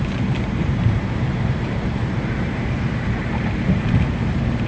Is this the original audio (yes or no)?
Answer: no